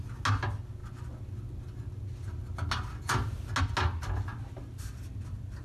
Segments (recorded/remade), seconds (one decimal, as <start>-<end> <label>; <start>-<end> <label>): 0.0-5.6 recorded